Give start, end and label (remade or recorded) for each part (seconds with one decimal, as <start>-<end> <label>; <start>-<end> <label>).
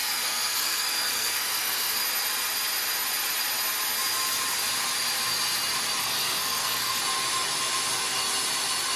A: 0.0-2.0 remade; 2.0-6.0 recorded; 6.0-7.0 remade; 7.0-9.0 recorded